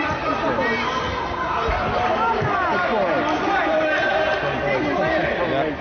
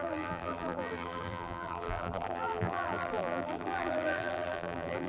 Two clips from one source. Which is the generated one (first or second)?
second